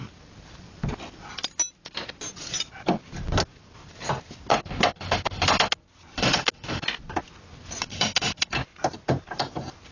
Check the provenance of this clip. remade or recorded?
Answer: recorded